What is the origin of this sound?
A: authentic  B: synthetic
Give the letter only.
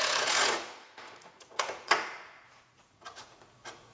B